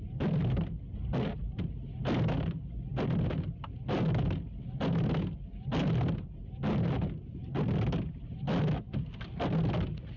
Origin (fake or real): real